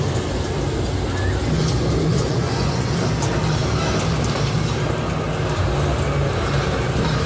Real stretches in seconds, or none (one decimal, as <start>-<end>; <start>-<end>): 0.0-2.1; 3.0-7.3